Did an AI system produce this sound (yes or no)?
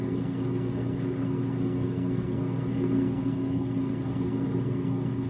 yes